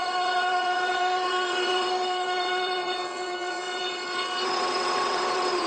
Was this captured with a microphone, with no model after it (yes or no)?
no